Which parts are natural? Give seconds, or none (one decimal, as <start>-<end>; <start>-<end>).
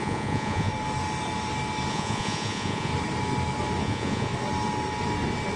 0.7-1.9; 2.9-3.8; 4.3-5.6